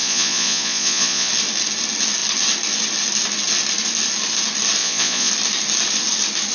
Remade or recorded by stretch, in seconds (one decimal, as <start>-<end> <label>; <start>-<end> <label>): 0.0-1.3 remade; 1.3-4.8 recorded; 4.8-5.3 remade; 5.3-6.5 recorded